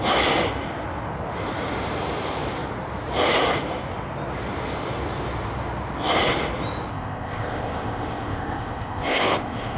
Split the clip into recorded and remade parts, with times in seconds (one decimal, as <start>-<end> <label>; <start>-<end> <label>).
0.0-6.9 recorded; 6.9-9.8 remade